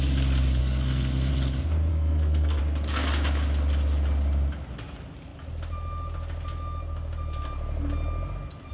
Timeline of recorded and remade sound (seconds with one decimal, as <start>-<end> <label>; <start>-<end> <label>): 0.0-0.6 recorded; 0.6-1.3 remade; 1.3-1.9 recorded; 1.9-2.6 remade; 2.6-8.7 recorded